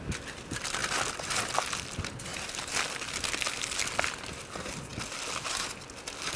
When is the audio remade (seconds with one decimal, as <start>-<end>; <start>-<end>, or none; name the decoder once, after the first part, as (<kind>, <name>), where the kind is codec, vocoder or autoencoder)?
none

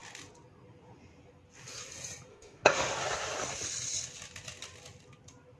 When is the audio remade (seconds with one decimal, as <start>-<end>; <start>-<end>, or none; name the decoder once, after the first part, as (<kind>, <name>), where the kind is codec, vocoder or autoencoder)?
2.3-2.9 (autoencoder, DAC-VAE)

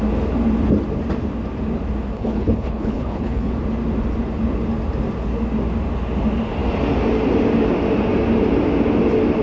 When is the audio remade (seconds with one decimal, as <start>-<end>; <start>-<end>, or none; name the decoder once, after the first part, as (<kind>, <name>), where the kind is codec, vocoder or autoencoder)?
2.1-3.5 (codec, HILCodec)

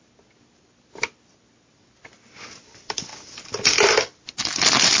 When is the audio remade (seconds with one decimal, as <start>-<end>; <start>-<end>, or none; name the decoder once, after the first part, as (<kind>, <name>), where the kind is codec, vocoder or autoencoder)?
none

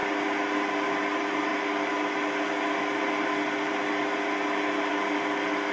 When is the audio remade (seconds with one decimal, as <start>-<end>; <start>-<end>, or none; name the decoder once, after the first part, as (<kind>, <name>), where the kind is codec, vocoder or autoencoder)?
none

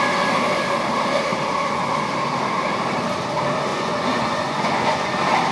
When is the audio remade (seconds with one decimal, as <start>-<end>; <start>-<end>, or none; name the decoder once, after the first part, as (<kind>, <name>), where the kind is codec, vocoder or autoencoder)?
3.7-5.1 (vocoder, Vocos)